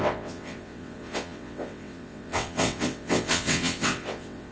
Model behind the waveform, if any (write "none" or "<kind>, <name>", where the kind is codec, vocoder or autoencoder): vocoder, WaveNeXt